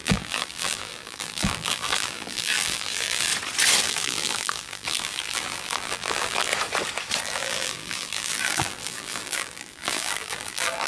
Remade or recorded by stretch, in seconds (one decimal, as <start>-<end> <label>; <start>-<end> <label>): 0.0-3.3 remade; 3.3-3.8 recorded; 3.8-6.5 remade; 6.5-7.2 recorded; 7.2-10.9 remade